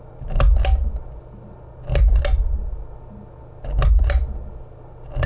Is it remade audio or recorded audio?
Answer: recorded